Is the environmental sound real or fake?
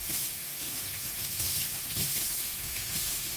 fake